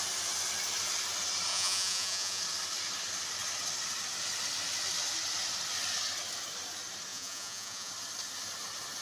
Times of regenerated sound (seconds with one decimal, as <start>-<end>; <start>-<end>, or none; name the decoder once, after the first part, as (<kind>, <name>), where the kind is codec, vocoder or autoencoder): 1.5-2.4 (vocoder, Vocos); 7.1-7.9